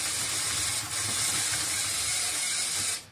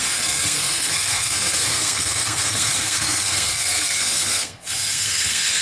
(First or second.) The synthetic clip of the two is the second